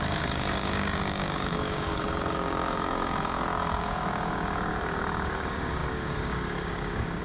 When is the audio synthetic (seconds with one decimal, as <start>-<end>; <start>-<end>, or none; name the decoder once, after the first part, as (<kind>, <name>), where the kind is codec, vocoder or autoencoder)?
0.0-7.2 (codec, DAC)